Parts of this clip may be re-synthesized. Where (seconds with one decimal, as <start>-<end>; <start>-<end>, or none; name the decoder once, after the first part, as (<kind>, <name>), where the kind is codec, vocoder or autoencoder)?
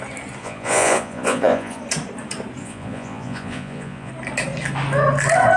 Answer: 0.4-1.8 (vocoder, Vocos); 2.6-4.1